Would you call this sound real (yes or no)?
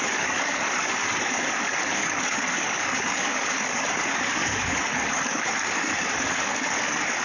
no